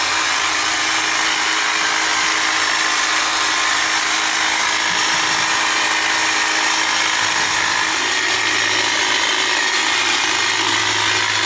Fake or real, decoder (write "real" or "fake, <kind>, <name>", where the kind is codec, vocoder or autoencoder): real